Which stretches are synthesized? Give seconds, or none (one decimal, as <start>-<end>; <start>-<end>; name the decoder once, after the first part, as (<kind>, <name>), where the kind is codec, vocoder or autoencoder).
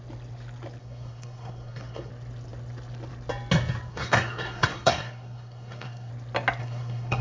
0.8-2.1 (codec, SNAC); 3.9-6.1; 6.6-7.2